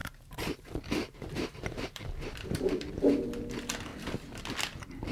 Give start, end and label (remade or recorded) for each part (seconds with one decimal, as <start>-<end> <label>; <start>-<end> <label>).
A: 0.0-2.8 remade; 2.8-5.1 recorded